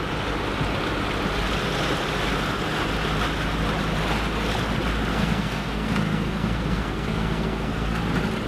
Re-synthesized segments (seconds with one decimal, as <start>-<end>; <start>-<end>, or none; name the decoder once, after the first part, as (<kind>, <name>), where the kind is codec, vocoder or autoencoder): 5.1-8.0 (codec, SNAC)